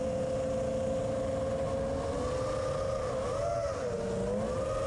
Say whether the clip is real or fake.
real